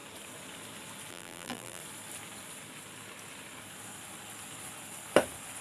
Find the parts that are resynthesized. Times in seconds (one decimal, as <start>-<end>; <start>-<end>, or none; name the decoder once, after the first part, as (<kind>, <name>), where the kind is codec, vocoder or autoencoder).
1.1-1.8 (vocoder, BigVGAN v2)